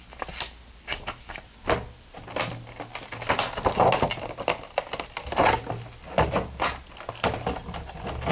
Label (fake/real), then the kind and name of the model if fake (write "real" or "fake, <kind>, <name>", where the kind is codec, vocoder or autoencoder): real